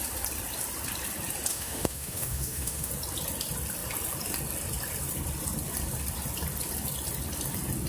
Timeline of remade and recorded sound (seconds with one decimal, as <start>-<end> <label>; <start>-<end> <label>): 0.0-1.5 recorded; 1.5-2.9 remade; 2.9-7.9 recorded